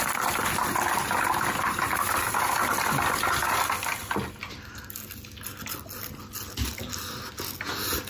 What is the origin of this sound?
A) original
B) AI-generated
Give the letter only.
A